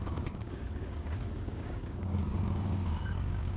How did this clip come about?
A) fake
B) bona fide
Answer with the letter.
A